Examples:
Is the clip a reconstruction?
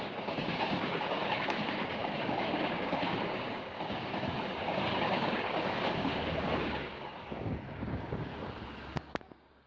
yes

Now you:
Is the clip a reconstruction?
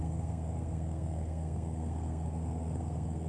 yes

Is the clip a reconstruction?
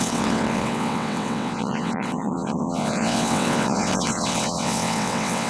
yes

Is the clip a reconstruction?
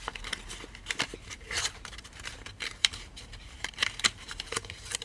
yes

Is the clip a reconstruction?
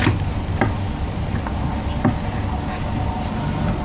no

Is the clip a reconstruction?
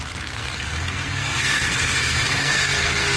yes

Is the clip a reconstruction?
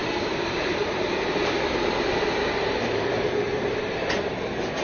yes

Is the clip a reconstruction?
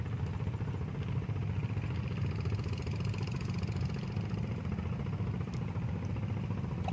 no